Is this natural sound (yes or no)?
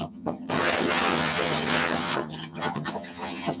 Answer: no